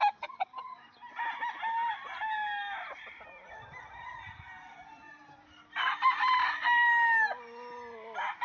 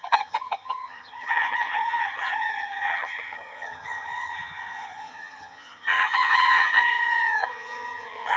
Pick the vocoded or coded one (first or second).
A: second